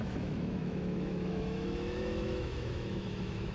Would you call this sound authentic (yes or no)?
no